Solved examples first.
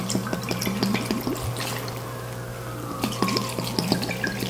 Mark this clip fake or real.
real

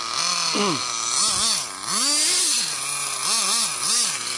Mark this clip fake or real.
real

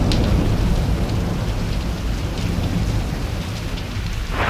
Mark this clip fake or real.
real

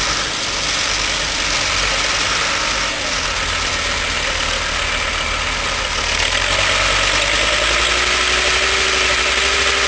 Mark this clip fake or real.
real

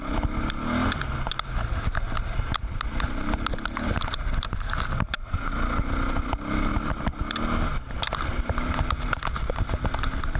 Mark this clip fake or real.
real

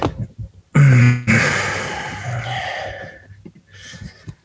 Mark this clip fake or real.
real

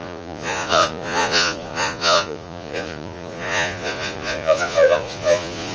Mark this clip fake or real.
fake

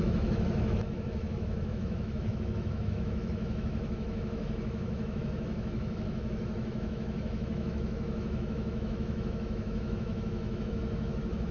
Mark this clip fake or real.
fake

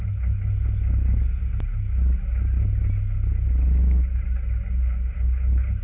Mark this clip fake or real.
real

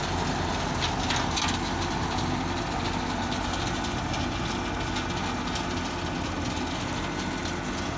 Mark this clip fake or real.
real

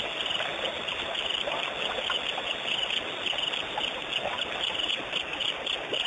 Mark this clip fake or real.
real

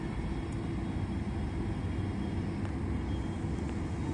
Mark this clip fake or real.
real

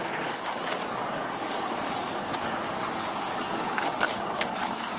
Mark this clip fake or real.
fake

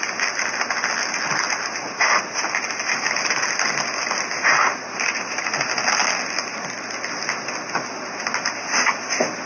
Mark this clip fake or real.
real